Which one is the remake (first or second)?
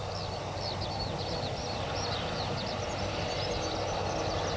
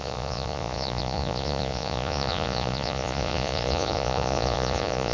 second